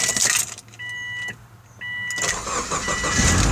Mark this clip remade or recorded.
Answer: recorded